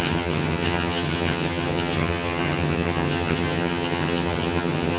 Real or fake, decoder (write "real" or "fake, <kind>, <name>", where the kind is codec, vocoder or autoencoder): fake, vocoder, HiFi-GAN